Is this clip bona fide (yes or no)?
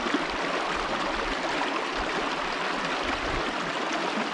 yes